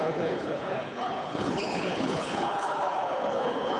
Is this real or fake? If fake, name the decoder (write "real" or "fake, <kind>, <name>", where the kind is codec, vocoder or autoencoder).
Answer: fake, codec, HILCodec